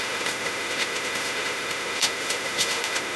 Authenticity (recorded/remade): remade